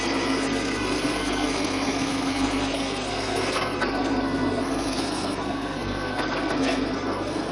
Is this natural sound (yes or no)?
no